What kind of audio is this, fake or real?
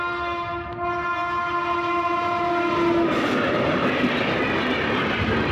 real